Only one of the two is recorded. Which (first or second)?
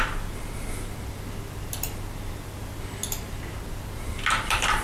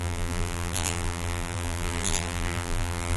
first